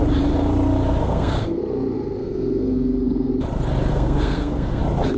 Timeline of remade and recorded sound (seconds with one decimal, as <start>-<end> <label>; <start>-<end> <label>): 0.0-1.0 recorded; 1.0-1.6 remade; 1.6-2.2 recorded; 2.2-3.3 remade; 3.3-3.9 recorded; 3.9-4.8 remade; 4.8-5.2 recorded